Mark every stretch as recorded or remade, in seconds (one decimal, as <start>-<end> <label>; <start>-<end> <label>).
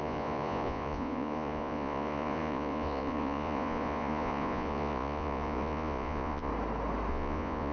0.0-6.5 remade; 6.5-7.1 recorded; 7.1-7.7 remade